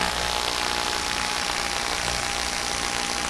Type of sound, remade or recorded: recorded